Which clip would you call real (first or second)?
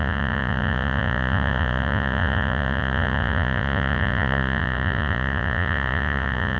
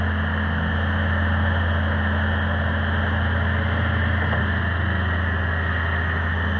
second